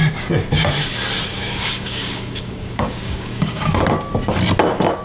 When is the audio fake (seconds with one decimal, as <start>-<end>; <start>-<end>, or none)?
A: 1.3-3.8